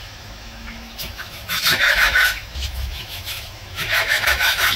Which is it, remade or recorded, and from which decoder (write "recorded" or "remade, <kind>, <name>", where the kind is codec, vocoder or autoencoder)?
remade, autoencoder, DAC-VAE